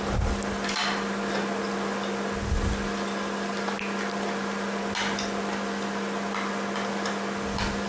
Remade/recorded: recorded